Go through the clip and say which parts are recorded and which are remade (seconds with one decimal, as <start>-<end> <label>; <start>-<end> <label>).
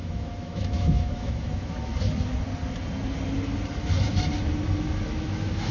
0.0-1.9 remade; 1.9-5.1 recorded; 5.1-5.7 remade